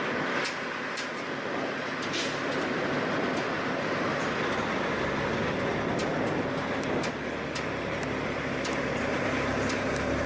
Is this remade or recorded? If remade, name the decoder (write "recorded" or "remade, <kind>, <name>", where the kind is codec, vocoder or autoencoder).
recorded